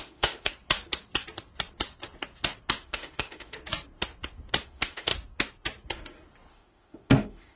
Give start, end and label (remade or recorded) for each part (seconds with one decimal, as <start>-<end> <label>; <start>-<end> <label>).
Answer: 0.0-0.5 remade; 0.5-2.8 recorded; 2.8-3.6 remade; 3.6-4.6 recorded; 4.6-5.1 remade; 5.1-6.5 recorded; 6.5-7.6 remade